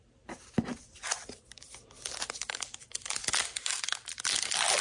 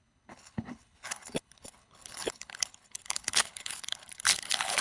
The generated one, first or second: second